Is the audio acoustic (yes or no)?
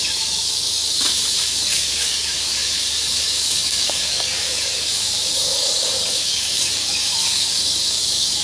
no